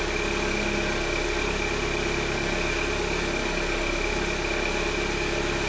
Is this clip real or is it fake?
real